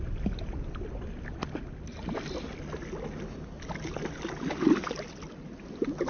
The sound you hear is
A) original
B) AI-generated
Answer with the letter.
A